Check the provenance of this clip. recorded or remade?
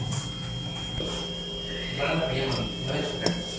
recorded